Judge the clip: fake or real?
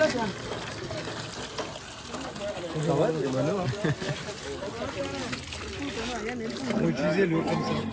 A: real